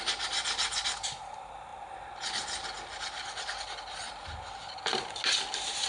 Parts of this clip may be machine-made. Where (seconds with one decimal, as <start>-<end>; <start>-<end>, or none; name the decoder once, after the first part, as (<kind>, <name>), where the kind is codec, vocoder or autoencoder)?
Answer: none